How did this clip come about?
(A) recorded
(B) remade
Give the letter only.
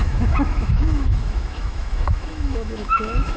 B